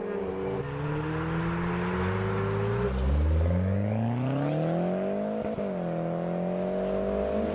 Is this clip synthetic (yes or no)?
no